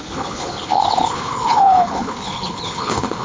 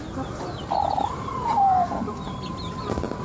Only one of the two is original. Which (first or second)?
second